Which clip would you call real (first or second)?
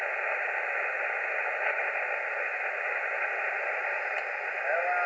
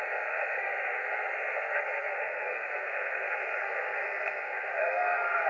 first